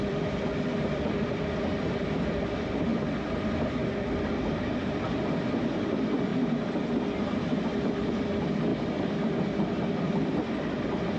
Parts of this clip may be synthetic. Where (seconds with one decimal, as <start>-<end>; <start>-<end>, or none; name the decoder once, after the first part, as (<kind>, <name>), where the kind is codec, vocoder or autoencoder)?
0.0-6.3 (vocoder, BigVGAN v2); 7.9-8.7; 10.1-11.2